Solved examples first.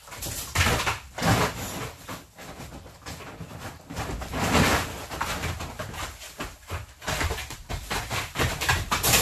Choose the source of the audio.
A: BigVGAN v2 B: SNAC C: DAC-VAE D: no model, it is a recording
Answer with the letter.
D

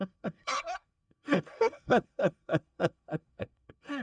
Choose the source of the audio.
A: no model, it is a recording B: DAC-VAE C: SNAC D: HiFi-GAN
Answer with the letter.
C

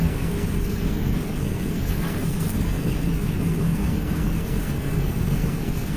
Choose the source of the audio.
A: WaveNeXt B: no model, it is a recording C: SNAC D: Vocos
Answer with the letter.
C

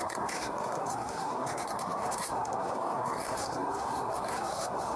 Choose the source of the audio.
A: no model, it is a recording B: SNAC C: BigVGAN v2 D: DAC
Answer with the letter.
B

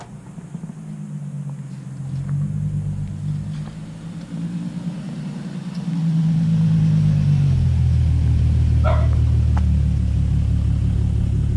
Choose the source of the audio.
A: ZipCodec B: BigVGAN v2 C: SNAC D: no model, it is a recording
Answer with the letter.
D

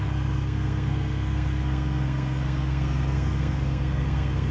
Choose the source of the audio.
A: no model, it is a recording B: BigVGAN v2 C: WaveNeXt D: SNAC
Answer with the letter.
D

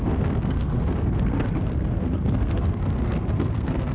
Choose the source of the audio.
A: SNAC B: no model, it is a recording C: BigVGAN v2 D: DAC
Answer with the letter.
A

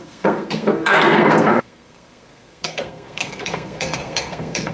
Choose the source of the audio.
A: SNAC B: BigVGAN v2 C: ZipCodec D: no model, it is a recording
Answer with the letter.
A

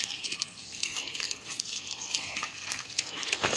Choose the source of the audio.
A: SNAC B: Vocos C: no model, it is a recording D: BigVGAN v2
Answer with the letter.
A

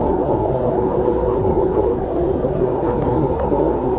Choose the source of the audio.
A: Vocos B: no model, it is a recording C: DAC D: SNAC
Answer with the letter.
D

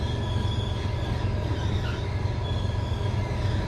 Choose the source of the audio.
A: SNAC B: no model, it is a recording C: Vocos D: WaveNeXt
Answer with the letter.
B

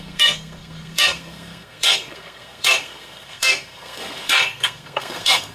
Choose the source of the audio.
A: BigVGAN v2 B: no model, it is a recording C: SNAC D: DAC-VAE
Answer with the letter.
C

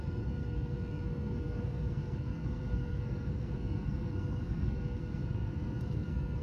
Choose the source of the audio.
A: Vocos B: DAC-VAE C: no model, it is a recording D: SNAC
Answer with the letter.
D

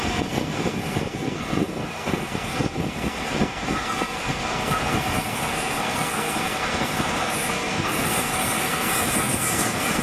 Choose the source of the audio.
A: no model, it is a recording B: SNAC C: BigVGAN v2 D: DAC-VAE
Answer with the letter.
B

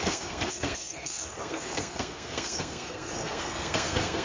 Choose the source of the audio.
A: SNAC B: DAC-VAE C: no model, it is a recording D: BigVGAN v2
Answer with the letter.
A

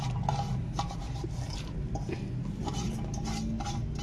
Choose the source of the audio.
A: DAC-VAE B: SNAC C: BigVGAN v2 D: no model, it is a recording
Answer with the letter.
D